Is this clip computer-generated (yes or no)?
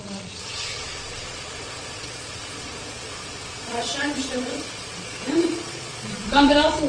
yes